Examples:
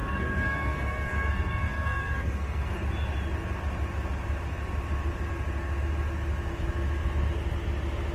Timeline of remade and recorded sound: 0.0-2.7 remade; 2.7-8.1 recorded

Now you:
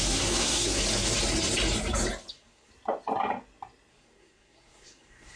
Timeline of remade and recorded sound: 0.0-0.8 remade; 0.8-2.3 recorded; 2.3-2.7 remade; 2.7-3.9 recorded; 3.9-5.4 remade

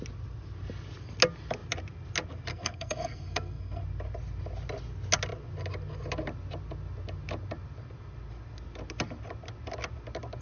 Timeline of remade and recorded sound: 0.0-2.5 recorded; 2.5-3.8 remade; 3.8-10.4 recorded

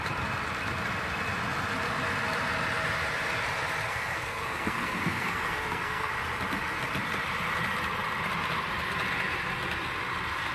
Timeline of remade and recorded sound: 0.0-3.9 recorded; 3.9-6.1 remade; 6.1-10.5 recorded